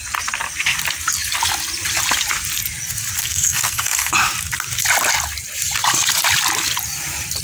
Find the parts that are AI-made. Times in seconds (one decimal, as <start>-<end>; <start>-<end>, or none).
3.2-4.1